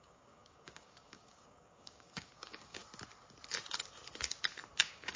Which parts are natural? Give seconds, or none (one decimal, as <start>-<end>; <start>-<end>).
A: 2.8-4.8